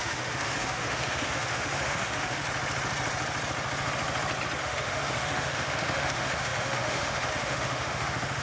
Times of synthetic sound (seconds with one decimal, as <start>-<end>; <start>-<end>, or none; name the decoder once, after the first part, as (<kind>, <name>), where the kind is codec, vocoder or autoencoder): 0.0-2.4 (autoencoder, DAC-VAE); 4.6-8.4